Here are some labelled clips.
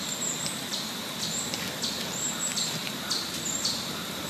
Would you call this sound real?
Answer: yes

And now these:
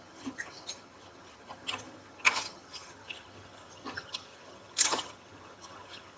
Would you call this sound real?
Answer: no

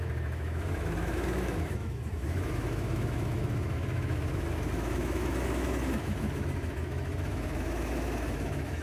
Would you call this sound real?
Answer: no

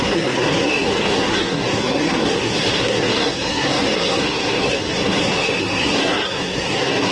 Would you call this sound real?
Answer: no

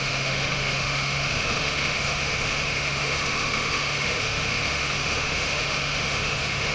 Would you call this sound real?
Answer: no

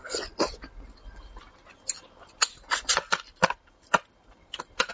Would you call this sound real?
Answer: yes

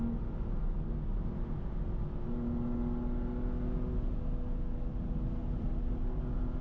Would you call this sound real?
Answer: yes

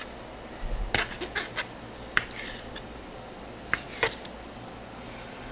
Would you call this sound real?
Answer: yes